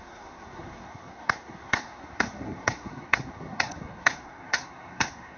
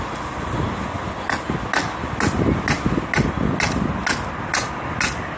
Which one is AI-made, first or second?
first